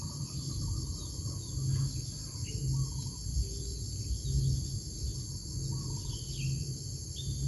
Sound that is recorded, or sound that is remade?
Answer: recorded